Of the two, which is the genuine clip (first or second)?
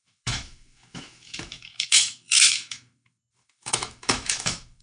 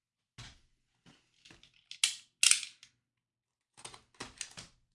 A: second